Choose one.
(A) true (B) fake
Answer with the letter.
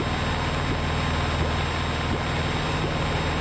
A